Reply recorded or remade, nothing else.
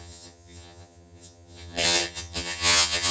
remade